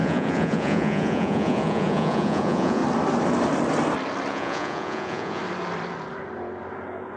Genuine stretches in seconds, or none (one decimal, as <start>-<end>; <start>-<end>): 2.8-4.3; 5.4-7.2